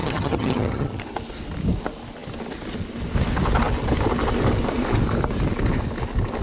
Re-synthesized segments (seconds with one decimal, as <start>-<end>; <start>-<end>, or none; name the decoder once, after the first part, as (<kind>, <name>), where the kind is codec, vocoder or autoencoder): 0.0-1.0 (vocoder, HiFi-GAN)